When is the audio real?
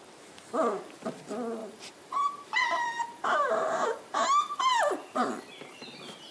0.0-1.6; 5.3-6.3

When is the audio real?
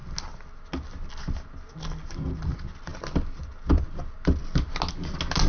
0.0-5.5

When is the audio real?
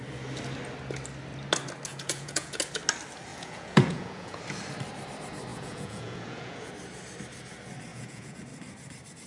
0.0-1.9; 2.6-3.3; 4.4-5.5; 6.7-7.9; 8.4-9.3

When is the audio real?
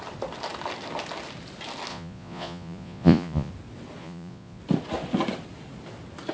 0.0-1.9; 3.5-4.0; 4.6-6.3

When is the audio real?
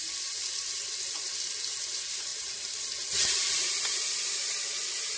0.0-1.7